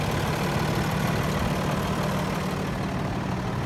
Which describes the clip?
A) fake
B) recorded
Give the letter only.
B